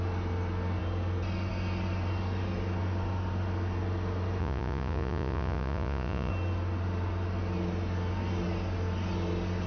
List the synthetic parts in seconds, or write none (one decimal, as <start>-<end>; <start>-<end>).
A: 4.4-6.3